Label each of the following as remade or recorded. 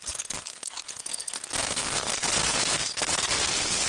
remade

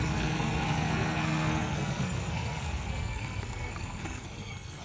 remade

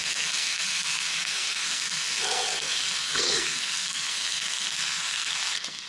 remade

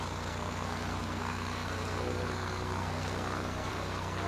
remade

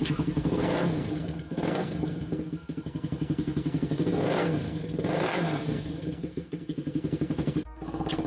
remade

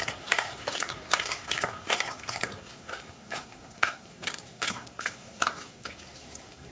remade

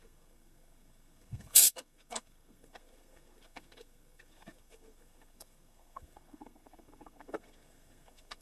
remade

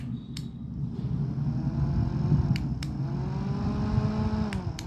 recorded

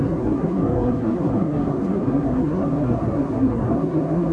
remade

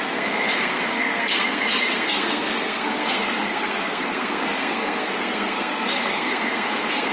remade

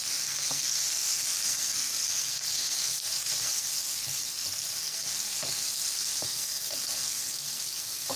remade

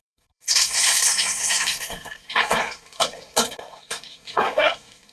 remade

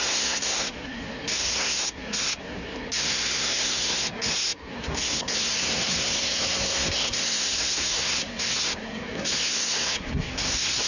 remade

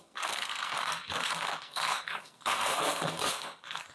remade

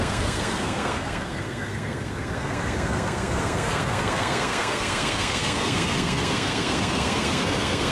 remade